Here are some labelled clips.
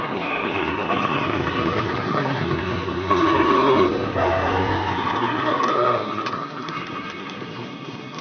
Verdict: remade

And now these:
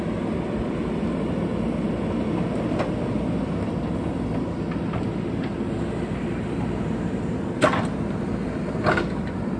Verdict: recorded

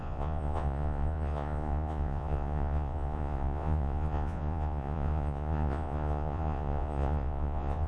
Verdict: remade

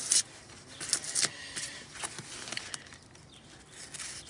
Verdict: recorded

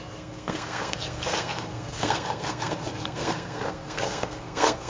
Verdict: remade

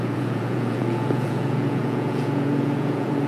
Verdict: remade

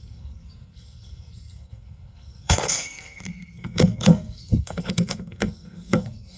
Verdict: remade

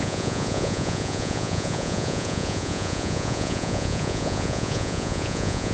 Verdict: remade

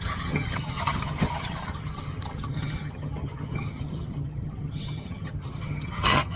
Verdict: remade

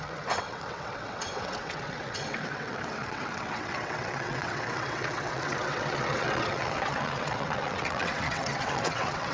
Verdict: remade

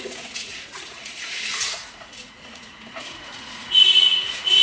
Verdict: remade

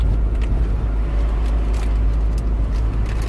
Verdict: recorded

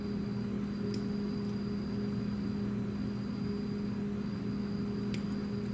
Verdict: recorded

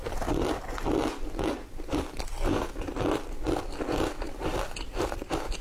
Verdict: recorded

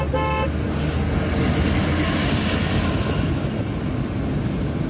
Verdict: recorded